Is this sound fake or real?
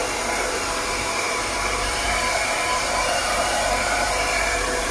fake